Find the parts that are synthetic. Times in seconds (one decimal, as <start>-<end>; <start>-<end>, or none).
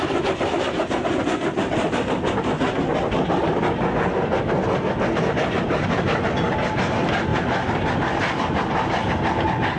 none